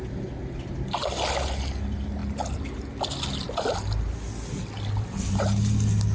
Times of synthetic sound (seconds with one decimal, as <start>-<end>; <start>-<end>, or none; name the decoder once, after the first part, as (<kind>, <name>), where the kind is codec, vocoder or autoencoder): none